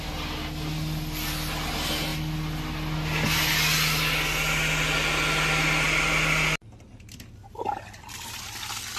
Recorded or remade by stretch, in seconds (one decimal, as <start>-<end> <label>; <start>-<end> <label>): 0.0-9.0 recorded